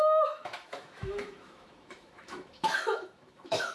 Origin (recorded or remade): remade